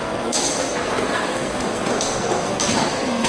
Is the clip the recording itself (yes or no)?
no